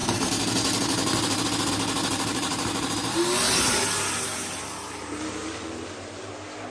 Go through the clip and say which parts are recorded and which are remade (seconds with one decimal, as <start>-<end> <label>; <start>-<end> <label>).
0.0-2.3 recorded; 2.3-6.3 remade; 6.3-6.7 recorded